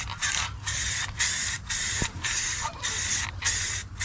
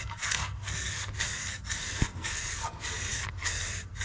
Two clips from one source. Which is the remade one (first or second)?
second